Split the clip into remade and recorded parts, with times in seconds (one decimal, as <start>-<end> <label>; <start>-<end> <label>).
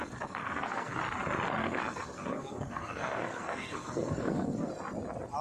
0.0-0.4 recorded; 0.4-1.0 remade; 1.0-1.6 recorded; 1.6-4.7 remade; 4.7-5.4 recorded